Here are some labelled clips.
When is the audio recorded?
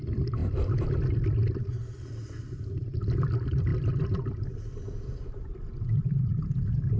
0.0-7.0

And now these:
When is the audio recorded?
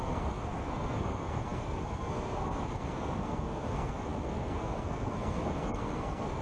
none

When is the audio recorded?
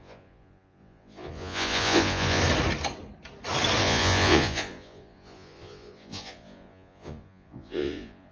2.4-3.8